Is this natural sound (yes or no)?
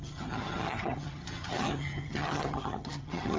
no